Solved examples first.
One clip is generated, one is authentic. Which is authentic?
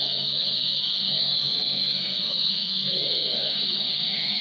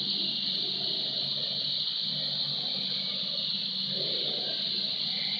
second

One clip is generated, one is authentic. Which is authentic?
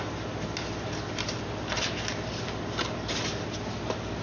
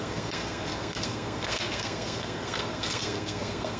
first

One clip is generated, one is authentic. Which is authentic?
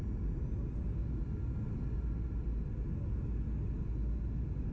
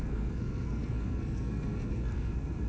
first